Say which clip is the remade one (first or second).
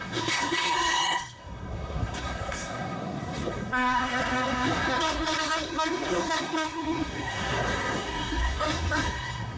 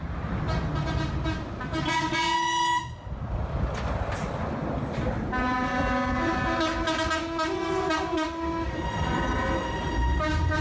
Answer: first